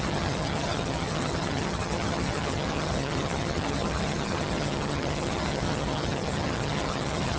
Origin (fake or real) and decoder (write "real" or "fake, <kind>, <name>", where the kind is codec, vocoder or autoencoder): fake, vocoder, HiFi-GAN